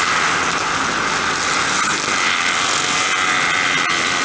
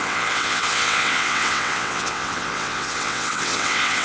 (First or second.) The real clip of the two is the first